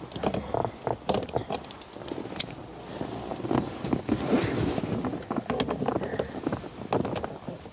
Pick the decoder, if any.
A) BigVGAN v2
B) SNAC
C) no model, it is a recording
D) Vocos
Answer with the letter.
C